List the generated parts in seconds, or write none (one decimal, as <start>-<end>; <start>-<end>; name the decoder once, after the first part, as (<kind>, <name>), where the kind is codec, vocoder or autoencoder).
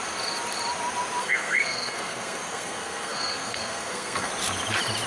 1.2-4.3 (codec, SNAC)